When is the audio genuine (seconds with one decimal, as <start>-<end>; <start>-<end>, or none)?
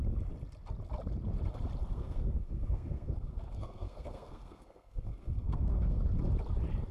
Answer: 0.0-1.9; 6.0-6.9